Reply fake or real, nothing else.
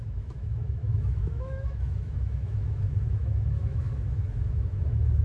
fake